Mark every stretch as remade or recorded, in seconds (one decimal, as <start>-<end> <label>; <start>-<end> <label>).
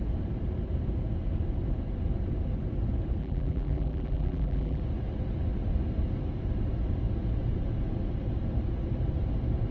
0.0-3.2 recorded; 3.2-4.8 remade; 4.8-9.7 recorded